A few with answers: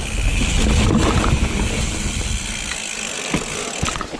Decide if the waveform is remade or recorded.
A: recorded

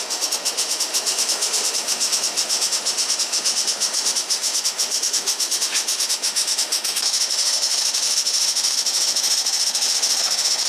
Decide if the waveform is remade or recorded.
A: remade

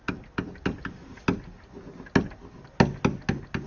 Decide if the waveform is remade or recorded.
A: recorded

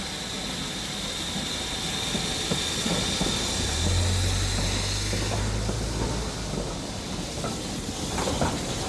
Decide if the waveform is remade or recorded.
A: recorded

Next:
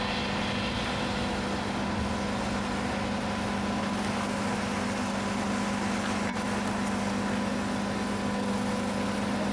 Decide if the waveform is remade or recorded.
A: recorded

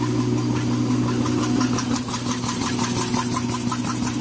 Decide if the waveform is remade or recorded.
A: recorded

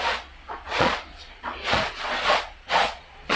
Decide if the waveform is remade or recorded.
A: remade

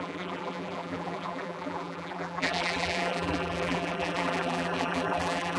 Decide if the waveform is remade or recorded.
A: remade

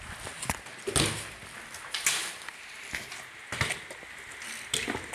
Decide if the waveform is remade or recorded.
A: recorded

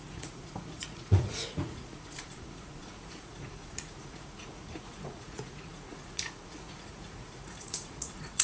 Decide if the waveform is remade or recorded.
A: remade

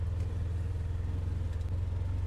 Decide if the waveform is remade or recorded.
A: recorded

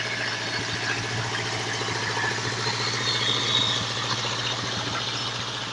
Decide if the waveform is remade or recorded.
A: recorded